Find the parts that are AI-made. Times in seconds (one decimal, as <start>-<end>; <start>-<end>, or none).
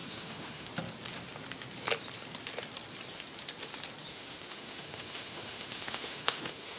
0.0-0.7; 4.1-6.8